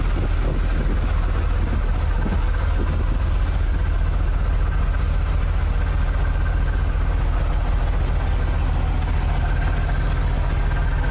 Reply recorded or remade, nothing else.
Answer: recorded